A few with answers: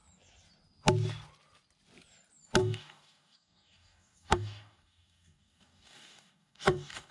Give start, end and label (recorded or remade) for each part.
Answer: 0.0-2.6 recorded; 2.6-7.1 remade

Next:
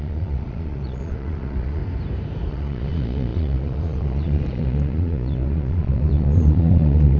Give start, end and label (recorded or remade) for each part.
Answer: 0.0-1.8 remade; 1.8-2.5 recorded; 2.5-7.2 remade

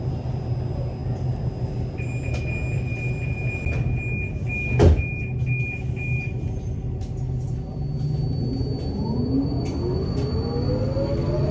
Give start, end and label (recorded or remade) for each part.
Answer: 0.0-11.5 recorded

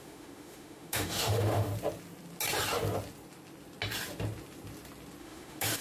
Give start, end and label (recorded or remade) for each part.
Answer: 0.0-1.7 remade; 1.7-5.2 recorded; 5.2-5.8 remade

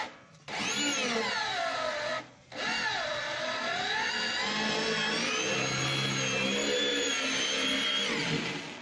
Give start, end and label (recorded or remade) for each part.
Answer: 0.0-6.5 recorded; 6.5-7.1 remade; 7.1-8.8 recorded

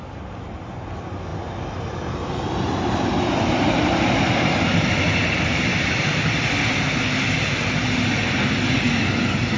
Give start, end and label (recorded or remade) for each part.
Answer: 0.0-9.6 recorded

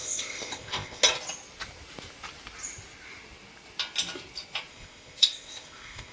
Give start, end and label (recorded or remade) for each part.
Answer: 0.0-1.0 remade; 1.0-4.7 recorded; 4.7-6.1 remade